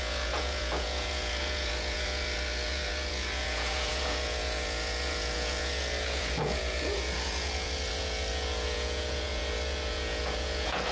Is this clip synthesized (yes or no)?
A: yes